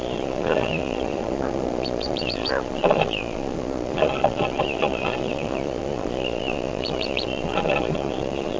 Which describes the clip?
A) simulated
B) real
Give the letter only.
A